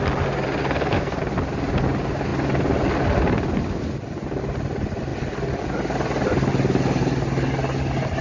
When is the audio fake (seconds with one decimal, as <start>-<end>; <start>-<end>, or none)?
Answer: 0.6-1.2